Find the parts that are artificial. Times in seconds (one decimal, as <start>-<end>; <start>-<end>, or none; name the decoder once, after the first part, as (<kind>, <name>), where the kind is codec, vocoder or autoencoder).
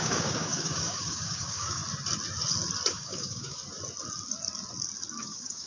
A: 0.0-1.8 (codec, DAC); 2.9-3.6; 5.2-5.7